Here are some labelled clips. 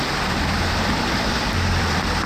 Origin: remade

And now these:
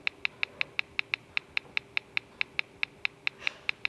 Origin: recorded